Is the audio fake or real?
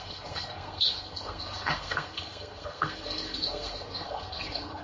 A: fake